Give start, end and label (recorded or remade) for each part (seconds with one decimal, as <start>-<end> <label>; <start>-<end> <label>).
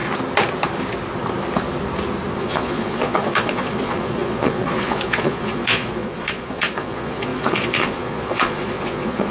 0.0-2.4 recorded; 2.4-9.3 remade